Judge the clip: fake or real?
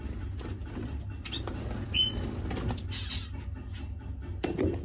real